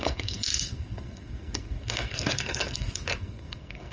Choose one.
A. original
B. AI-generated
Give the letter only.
B